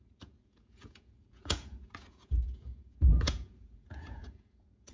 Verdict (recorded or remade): remade